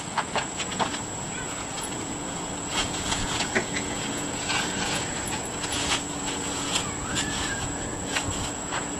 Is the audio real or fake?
fake